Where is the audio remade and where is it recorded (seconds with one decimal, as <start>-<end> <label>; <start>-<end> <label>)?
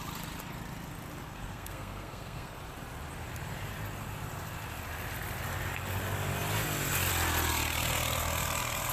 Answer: 0.0-1.2 recorded; 1.2-2.6 remade; 2.6-8.9 recorded